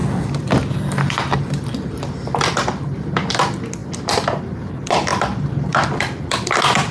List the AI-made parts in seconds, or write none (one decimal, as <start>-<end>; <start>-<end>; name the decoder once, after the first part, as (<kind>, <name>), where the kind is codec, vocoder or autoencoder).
3.8-4.4 (vocoder, BigVGAN v2)

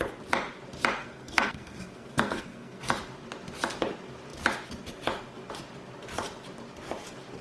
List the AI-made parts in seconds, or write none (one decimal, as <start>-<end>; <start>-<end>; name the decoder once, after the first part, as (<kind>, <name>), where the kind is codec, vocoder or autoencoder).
1.0-2.8 (codec, SNAC)

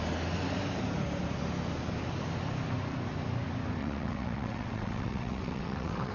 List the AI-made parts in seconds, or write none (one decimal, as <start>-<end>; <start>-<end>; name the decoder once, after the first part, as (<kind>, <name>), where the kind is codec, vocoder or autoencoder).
3.8-6.1 (vocoder, WaveNeXt)

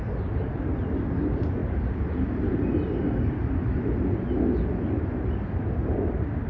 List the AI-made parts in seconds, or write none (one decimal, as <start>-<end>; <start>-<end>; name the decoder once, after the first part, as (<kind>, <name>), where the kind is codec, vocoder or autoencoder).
none

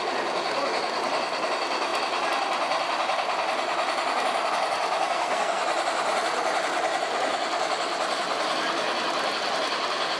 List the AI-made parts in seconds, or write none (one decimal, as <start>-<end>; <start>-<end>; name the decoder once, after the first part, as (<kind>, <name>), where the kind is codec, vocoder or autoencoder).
5.0-5.6 (codec, SNAC)